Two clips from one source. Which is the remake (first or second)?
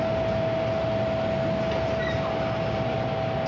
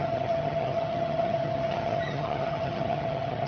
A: second